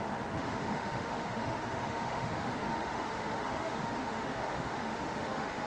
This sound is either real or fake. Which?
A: fake